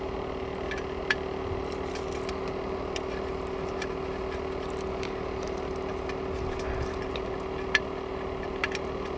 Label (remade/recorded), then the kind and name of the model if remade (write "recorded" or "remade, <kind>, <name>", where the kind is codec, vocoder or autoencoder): recorded